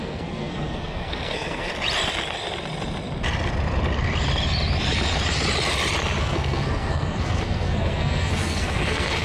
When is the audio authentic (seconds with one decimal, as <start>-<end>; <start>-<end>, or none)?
1.7-6.2